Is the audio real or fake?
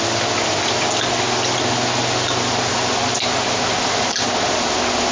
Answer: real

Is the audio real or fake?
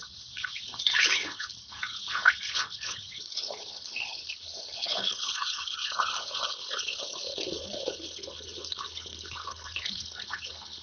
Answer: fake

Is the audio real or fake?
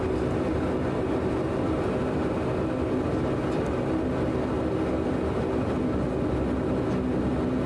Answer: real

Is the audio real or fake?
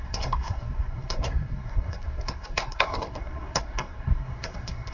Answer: fake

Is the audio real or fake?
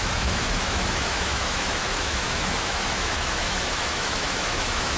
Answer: fake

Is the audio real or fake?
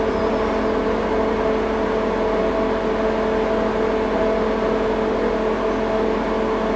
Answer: real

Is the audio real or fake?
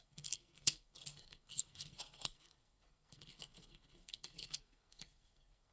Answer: fake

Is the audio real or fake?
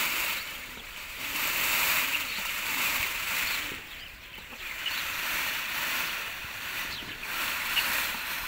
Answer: fake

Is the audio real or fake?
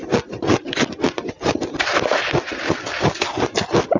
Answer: real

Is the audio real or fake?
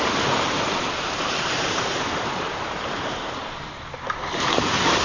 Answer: fake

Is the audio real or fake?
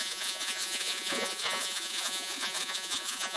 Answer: fake